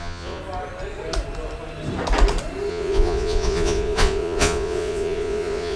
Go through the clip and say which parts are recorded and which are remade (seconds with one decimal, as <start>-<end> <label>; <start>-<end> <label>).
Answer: 0.0-0.4 remade; 0.4-2.7 recorded; 2.7-5.8 remade